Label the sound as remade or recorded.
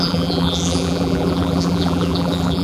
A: remade